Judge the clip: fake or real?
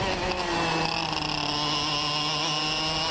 real